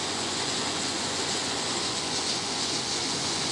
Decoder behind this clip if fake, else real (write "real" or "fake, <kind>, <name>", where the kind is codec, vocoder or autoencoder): fake, vocoder, Vocos